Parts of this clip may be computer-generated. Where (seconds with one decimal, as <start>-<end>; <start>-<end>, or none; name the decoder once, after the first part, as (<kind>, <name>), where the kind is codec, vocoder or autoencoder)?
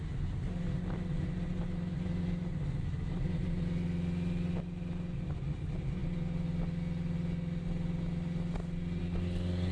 none